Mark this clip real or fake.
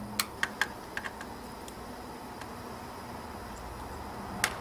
real